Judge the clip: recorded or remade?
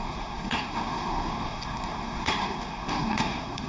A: remade